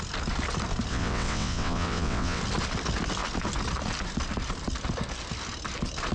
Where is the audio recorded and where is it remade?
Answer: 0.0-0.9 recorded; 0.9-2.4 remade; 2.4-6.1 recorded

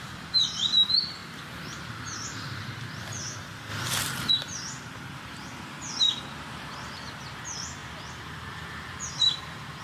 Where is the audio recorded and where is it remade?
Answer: 0.0-1.2 remade; 1.2-1.8 recorded; 1.8-9.8 remade

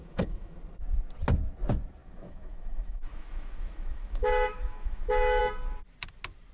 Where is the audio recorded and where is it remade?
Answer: 0.0-0.6 remade; 0.6-2.0 recorded; 2.0-5.4 remade; 5.4-6.5 recorded

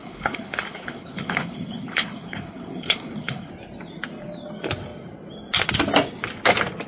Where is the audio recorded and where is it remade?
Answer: 0.0-3.5 remade; 3.5-6.9 recorded